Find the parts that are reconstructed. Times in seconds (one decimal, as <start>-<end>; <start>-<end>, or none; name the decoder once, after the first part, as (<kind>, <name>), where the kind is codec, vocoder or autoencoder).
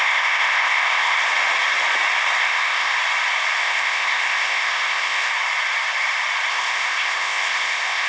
0.0-1.2 (codec, ZipCodec); 2.4-2.9; 3.6-5.3; 6.5-8.1